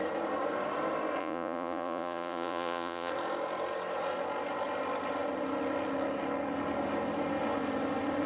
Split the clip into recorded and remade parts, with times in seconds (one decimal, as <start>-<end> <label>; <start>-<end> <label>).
0.0-1.2 recorded; 1.2-3.1 remade; 3.1-8.3 recorded